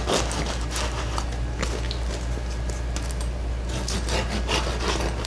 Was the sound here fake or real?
real